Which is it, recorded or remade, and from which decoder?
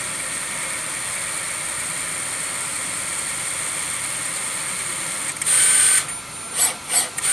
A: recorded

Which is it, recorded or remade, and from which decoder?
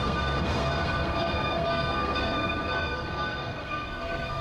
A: remade, codec, SNAC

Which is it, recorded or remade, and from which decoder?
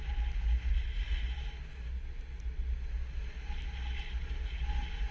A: recorded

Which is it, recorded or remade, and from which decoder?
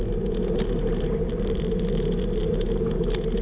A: recorded